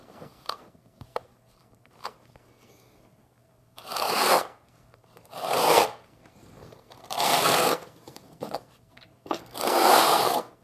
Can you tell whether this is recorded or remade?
remade